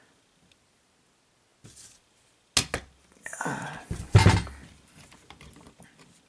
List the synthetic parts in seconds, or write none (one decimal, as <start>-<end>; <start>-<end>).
none